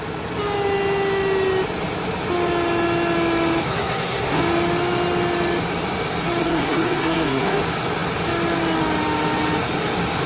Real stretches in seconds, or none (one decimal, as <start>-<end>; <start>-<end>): 0.0-3.7; 4.4-6.4; 7.6-10.3